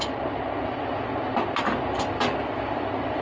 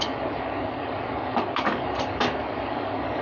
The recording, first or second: first